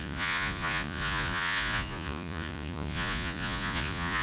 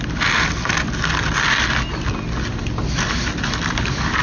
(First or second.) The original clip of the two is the second